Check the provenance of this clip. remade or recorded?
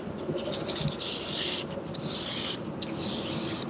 recorded